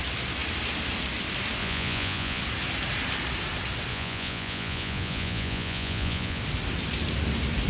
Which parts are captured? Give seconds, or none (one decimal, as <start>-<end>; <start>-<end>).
0.0-1.6; 2.4-3.9; 6.4-7.7